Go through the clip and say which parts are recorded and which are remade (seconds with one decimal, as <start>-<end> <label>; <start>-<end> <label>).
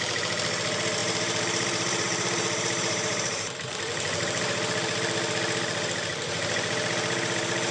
0.0-1.0 recorded; 1.0-3.8 remade; 3.8-7.7 recorded